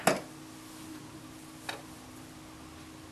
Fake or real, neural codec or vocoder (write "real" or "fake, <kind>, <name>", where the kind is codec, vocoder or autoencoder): real